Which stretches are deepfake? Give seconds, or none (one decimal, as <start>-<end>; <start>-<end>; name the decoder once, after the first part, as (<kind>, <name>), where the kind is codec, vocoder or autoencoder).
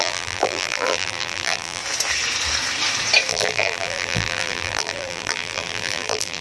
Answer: 0.0-1.8 (vocoder, BigVGAN v2); 3.3-6.4